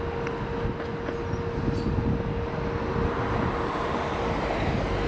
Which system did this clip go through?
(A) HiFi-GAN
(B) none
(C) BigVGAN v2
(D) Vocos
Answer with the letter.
B